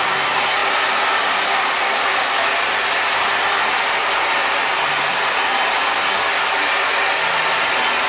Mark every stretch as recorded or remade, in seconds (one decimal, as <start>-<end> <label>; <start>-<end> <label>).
0.0-8.1 recorded